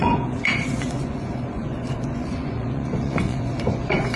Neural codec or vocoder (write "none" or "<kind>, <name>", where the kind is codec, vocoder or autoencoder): vocoder, Vocos